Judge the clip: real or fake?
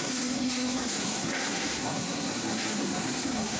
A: fake